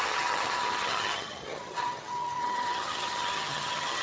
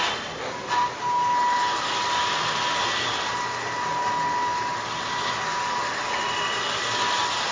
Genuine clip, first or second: second